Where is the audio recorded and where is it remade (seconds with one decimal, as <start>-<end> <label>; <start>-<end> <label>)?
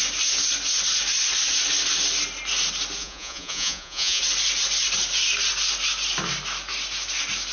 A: 0.0-3.0 recorded; 3.0-4.2 remade; 4.2-7.5 recorded